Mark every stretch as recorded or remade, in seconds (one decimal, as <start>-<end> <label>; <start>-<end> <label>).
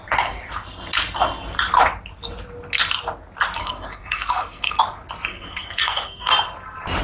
0.0-3.6 recorded; 3.6-4.8 remade; 4.8-5.3 recorded; 5.3-6.3 remade; 6.3-7.0 recorded